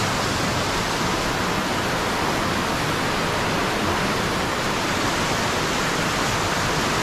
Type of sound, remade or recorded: recorded